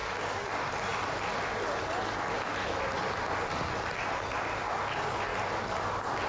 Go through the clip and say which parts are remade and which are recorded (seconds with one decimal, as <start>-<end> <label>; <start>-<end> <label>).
0.0-6.3 recorded